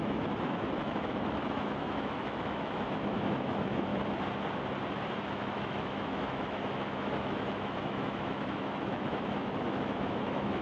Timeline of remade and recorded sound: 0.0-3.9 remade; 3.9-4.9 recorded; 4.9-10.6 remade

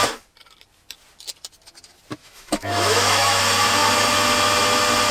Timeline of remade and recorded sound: 0.0-2.2 recorded; 2.2-3.4 remade; 3.4-5.1 recorded

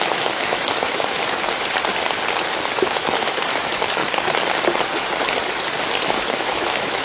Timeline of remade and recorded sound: 0.0-1.2 remade; 1.2-2.8 recorded; 2.8-4.0 remade; 4.0-6.0 recorded; 6.0-7.0 remade

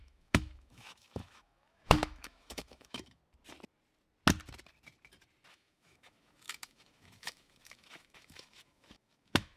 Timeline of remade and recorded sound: 0.0-3.2 remade; 3.2-5.5 recorded; 5.5-9.6 remade

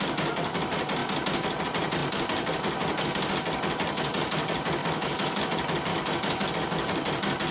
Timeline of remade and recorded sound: 0.0-4.8 recorded; 4.8-5.4 remade; 5.4-5.9 recorded; 5.9-6.5 remade; 6.5-7.5 recorded

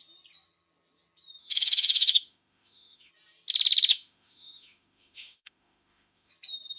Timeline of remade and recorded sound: 0.0-1.4 recorded; 1.4-3.1 remade; 3.1-3.9 recorded; 3.9-6.3 remade; 6.3-6.8 recorded

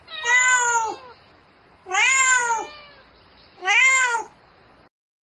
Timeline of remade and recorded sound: 0.0-3.6 recorded; 3.6-4.2 remade; 4.2-5.2 recorded

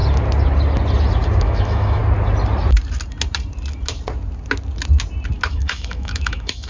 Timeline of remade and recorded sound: 0.0-1.4 recorded; 1.4-2.0 remade; 2.0-5.5 recorded; 5.5-6.7 remade